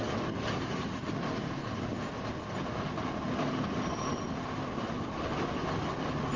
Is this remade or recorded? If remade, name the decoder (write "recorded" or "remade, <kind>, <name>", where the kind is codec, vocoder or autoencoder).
recorded